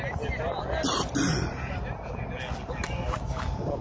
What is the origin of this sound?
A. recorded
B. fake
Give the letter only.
A